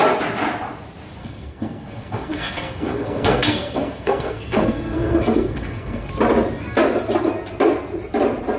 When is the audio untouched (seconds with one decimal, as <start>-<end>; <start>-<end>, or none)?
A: 0.0-1.2; 6.1-8.6